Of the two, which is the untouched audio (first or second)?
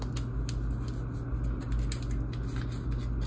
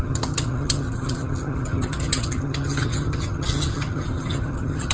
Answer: first